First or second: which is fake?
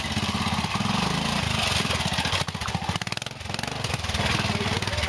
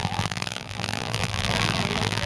second